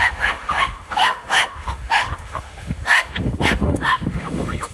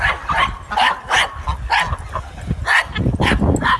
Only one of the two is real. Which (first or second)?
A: second